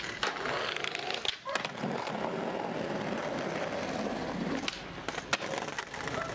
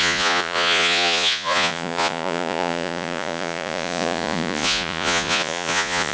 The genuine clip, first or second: first